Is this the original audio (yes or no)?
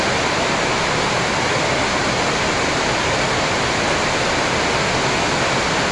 yes